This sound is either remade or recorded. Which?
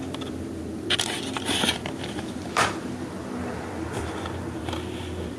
remade